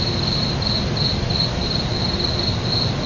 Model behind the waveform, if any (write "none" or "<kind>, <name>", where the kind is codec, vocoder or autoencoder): none